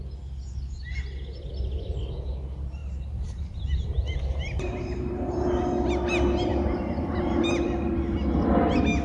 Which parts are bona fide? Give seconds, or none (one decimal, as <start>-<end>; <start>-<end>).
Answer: 0.0-2.8; 5.5-6.5; 7.9-9.0